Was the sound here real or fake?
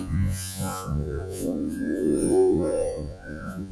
fake